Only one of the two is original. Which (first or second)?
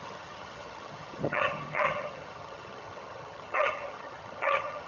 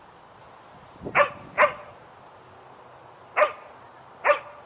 second